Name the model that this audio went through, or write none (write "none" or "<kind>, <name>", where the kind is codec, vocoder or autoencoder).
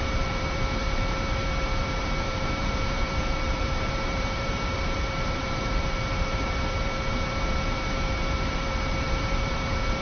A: vocoder, BigVGAN v2